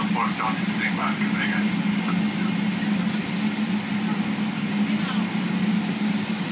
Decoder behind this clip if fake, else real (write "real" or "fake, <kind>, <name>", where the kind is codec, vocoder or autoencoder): real